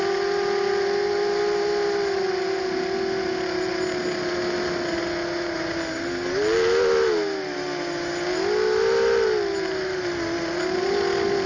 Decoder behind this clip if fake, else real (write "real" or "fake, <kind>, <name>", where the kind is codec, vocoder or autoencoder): real